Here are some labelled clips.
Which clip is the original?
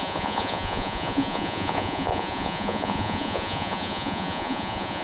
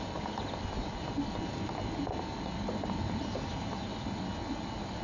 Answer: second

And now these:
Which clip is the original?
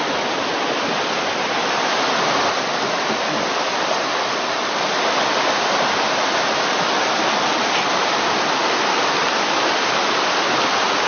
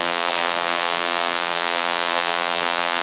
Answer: first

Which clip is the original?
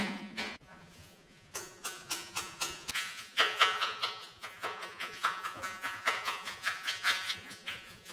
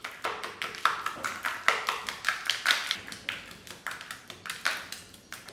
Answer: second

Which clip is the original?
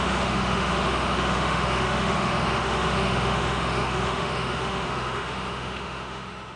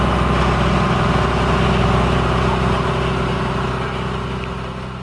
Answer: second